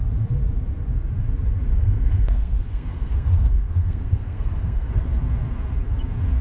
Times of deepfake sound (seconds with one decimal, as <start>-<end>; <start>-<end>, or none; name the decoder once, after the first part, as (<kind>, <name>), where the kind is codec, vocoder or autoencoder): 1.7-4.9 (codec, SNAC)